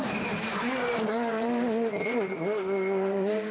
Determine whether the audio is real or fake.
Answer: fake